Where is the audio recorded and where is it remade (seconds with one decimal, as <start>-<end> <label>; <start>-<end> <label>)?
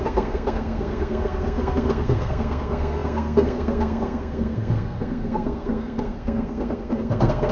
0.0-7.5 remade